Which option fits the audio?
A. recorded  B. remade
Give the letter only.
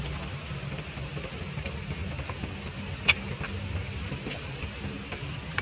A